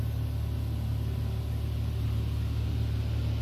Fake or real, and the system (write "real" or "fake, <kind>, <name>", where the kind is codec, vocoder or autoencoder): real